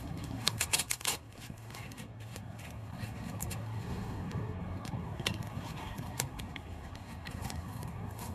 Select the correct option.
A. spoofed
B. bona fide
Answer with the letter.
A